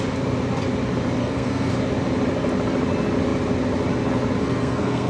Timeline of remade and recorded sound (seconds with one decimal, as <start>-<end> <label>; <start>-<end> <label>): 0.0-1.2 recorded; 1.2-1.7 remade; 1.7-4.4 recorded; 4.4-5.1 remade